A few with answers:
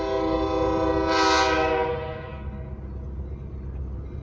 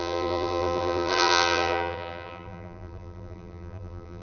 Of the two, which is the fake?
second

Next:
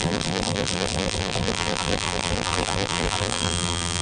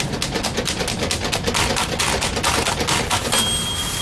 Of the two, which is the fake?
first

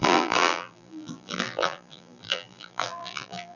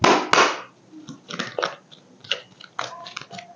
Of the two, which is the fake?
first